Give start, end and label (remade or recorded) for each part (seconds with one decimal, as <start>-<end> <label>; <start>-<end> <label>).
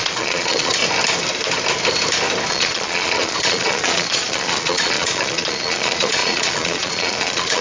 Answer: 0.0-0.8 remade; 0.8-2.5 recorded; 2.5-7.6 remade